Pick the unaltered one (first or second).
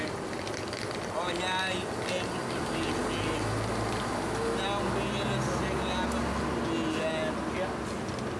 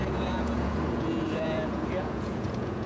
first